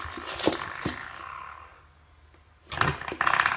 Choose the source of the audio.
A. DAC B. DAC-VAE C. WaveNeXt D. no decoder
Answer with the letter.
D